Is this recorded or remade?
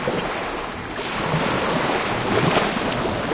recorded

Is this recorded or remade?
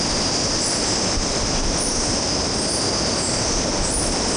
remade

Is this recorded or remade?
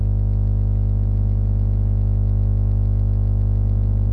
recorded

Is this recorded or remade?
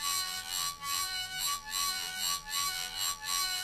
remade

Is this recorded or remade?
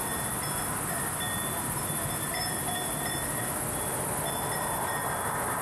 recorded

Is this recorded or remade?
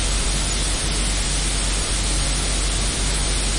recorded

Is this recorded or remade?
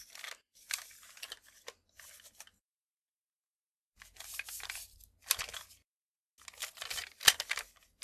recorded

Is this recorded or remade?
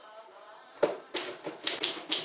remade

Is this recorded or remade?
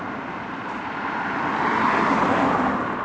recorded